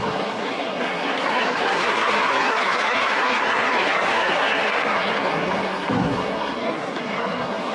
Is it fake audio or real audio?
fake